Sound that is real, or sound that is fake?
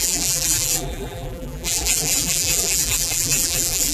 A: fake